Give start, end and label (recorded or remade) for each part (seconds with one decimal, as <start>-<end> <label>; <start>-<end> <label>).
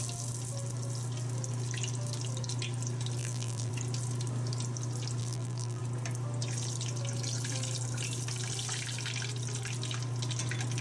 0.0-3.2 recorded; 3.2-3.7 remade; 3.7-5.2 recorded; 5.2-5.8 remade; 5.8-10.8 recorded